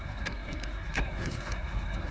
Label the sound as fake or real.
fake